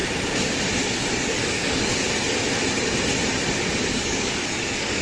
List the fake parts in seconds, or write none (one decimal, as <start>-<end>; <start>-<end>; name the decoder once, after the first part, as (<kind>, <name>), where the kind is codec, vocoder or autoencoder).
0.9-1.9 (codec, DAC); 3.9-5.0